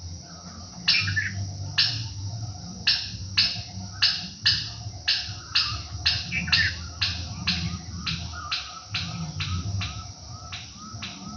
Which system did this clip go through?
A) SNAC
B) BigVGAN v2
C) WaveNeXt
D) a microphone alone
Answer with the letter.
D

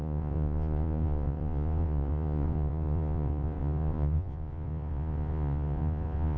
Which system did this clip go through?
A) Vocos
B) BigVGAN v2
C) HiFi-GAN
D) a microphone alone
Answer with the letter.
A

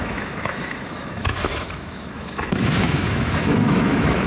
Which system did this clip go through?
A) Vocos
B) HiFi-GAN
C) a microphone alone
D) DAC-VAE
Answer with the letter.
D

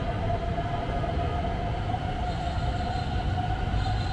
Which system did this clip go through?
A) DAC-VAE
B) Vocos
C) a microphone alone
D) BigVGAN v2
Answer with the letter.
C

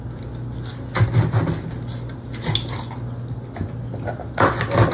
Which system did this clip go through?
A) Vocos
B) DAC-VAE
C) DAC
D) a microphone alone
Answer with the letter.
D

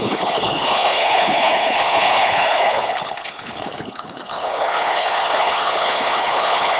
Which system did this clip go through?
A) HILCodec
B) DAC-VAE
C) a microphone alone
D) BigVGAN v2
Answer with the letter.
A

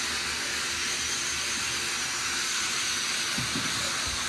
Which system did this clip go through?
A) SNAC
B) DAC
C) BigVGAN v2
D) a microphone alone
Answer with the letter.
D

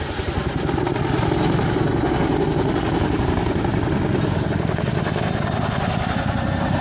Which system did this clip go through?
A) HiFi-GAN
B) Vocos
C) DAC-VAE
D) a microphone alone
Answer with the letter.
D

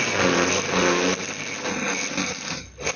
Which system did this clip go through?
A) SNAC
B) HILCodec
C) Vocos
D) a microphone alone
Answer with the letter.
D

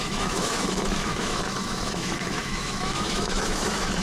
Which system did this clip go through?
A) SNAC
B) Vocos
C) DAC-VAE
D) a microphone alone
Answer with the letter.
C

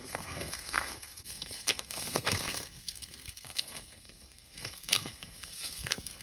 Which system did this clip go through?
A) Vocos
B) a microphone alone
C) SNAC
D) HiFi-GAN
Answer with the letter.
C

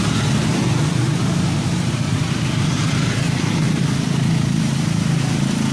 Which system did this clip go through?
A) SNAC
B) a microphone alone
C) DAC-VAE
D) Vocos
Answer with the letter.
B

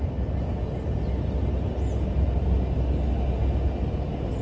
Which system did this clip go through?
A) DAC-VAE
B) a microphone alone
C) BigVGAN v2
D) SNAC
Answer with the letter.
B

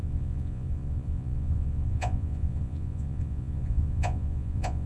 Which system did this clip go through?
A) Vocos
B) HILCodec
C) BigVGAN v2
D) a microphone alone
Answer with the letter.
A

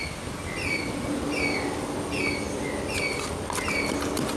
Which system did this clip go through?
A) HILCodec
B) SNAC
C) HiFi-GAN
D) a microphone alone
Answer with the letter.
D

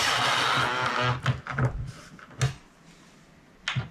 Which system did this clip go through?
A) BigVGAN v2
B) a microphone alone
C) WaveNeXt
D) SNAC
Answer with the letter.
B